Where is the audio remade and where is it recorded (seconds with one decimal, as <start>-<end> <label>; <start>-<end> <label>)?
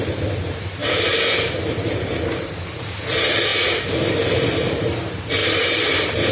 0.0-0.8 remade; 0.8-1.5 recorded; 1.5-3.5 remade; 3.5-4.7 recorded; 4.7-6.3 remade